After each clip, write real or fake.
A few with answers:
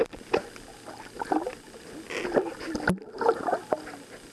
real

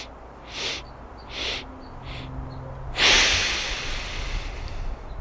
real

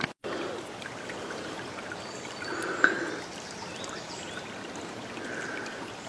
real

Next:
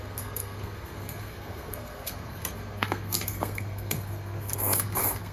fake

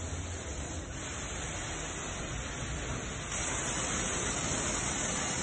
real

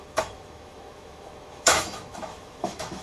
fake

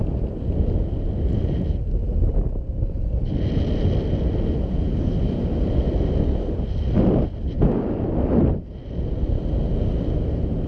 real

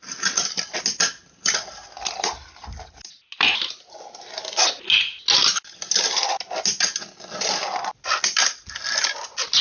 real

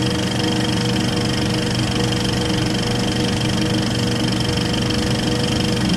real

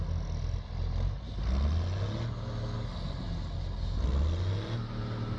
real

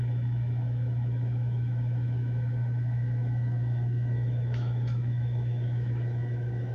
fake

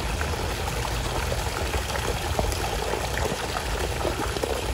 real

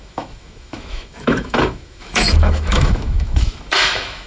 fake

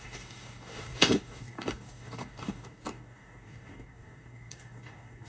fake